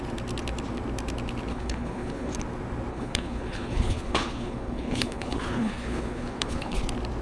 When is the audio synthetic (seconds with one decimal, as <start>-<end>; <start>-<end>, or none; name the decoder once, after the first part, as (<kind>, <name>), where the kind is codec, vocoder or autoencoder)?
1.5-2.3 (codec, HILCodec); 2.9-6.8